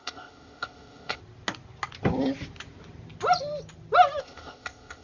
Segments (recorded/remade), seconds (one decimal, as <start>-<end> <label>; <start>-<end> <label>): 0.0-1.2 remade; 1.2-4.2 recorded; 4.2-5.0 remade